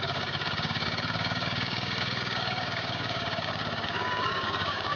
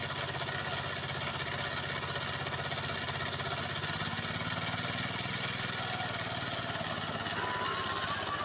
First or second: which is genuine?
second